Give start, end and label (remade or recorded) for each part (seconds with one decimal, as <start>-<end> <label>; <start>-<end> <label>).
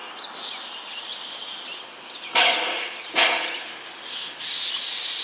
0.0-5.2 recorded